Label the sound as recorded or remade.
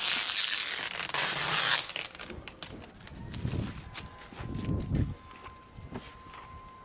recorded